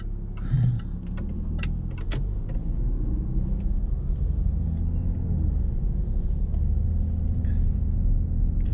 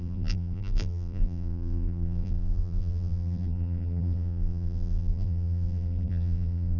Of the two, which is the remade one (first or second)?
second